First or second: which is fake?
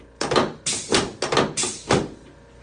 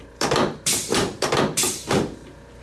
second